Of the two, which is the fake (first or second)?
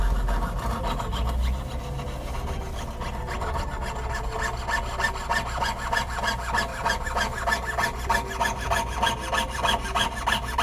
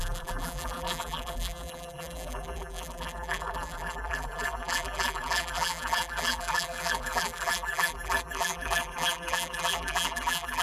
second